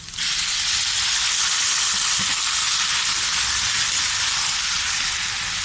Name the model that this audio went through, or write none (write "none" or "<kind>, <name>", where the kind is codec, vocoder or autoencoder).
none